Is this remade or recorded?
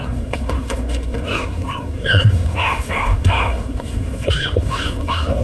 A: remade